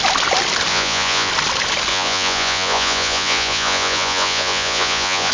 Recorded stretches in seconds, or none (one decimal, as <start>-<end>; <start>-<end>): 0.0-0.7; 1.3-1.9